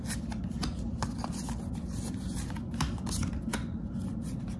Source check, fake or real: real